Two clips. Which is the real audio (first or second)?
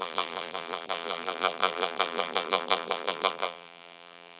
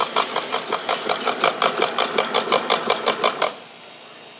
second